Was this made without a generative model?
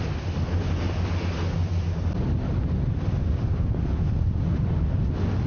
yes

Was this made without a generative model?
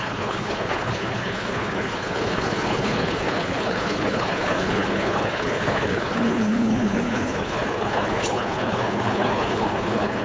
no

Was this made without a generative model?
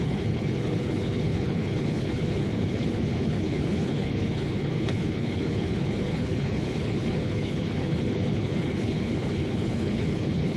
no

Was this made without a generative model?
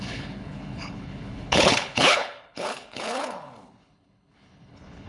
no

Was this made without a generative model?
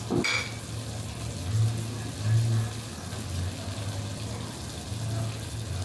yes